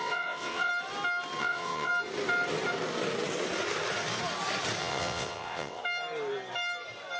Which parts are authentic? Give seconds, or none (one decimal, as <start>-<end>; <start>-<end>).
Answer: 0.7-1.4; 1.9-4.8; 5.8-7.2